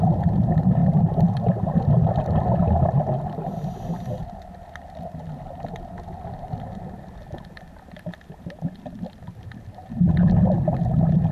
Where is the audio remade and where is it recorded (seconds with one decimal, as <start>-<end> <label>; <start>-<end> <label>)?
0.0-11.3 recorded